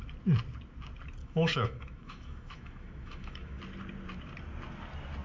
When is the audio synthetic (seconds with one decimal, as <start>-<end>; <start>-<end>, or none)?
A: 1.2-3.6